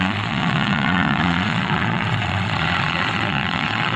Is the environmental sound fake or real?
fake